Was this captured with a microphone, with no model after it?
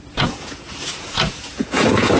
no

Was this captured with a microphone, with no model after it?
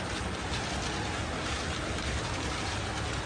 yes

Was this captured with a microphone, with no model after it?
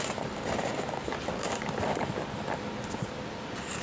yes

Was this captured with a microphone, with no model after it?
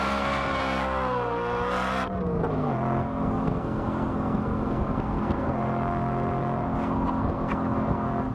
no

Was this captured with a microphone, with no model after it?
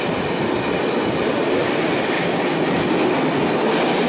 yes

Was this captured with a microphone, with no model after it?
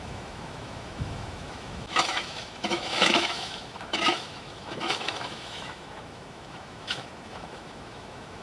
no